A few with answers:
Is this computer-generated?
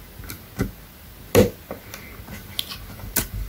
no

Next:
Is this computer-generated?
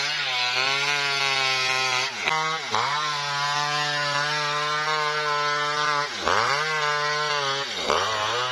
no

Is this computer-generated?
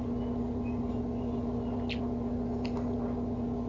no